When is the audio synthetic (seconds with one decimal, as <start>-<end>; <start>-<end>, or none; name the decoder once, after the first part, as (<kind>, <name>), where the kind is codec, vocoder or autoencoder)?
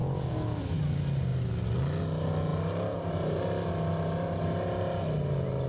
0.0-0.6 (codec, DAC)